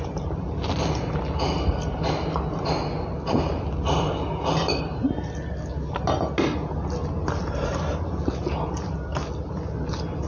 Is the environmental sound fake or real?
real